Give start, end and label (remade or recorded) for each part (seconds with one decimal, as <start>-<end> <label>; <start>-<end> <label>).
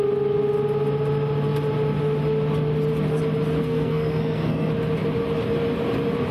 0.0-3.6 recorded; 3.6-4.7 remade; 4.7-6.3 recorded